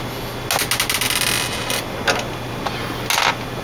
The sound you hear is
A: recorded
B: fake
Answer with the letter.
A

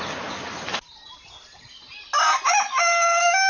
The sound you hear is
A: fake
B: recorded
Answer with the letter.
B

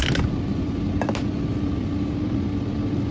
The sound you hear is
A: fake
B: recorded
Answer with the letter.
B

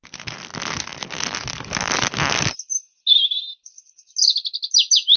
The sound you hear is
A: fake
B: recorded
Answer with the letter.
B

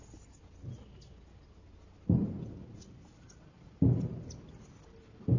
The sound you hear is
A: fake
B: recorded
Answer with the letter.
B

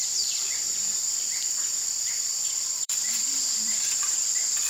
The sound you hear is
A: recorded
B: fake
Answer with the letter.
B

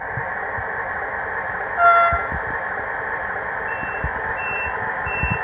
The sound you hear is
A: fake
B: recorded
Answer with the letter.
B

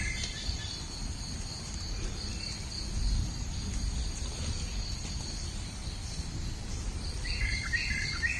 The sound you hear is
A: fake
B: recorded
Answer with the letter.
A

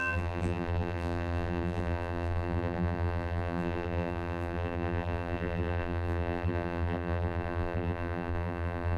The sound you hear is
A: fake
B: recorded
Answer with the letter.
A